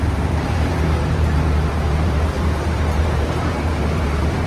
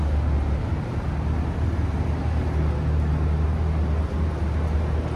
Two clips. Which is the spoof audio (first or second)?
first